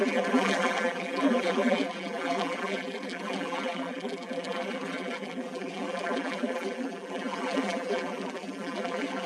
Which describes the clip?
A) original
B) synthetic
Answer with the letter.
B